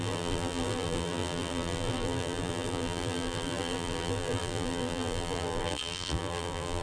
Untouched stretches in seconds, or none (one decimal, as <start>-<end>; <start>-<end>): none